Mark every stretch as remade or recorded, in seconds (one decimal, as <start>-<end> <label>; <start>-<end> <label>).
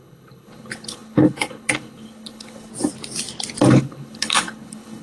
0.0-2.7 remade; 2.7-3.7 recorded; 3.7-5.0 remade